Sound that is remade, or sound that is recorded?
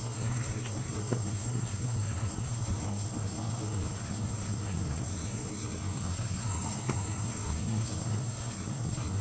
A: remade